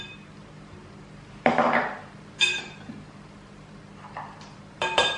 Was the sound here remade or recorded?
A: remade